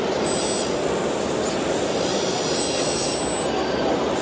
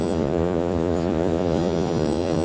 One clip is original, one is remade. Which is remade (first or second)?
second